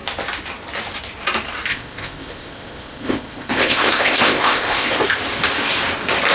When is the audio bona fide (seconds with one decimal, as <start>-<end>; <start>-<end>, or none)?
0.0-1.7; 4.9-6.3